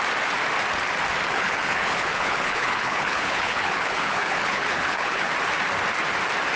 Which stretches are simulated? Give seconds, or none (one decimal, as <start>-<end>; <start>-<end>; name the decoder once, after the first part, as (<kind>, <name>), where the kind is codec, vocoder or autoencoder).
1.3-5.3 (codec, HILCodec)